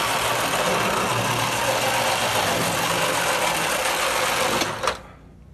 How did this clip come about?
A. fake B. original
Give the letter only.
B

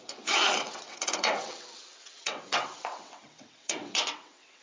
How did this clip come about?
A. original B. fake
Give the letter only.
B